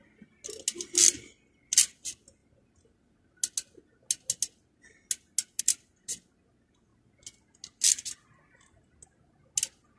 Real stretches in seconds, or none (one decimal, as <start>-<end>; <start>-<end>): 0.0-10.0